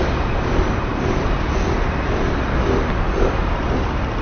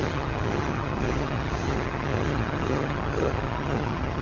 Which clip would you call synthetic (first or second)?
second